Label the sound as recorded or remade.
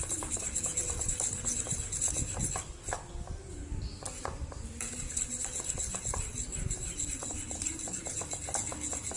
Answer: recorded